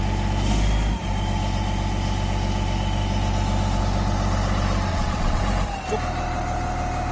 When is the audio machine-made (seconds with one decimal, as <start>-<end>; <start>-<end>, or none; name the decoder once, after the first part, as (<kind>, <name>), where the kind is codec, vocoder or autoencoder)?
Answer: 4.9-5.4 (vocoder, WaveNeXt)